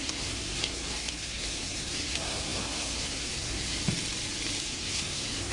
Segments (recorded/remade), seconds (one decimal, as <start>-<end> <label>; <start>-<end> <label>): 0.0-3.8 remade; 3.8-4.6 recorded; 4.6-5.5 remade